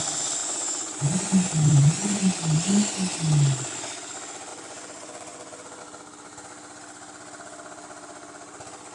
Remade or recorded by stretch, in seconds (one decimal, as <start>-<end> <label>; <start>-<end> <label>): 0.0-0.4 recorded; 0.4-2.2 remade; 2.2-4.5 recorded; 4.5-5.8 remade; 5.8-8.9 recorded